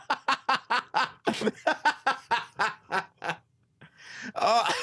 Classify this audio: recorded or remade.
recorded